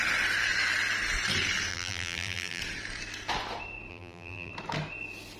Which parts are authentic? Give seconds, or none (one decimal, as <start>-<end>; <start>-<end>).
0.0-1.7; 2.6-3.9; 4.5-5.4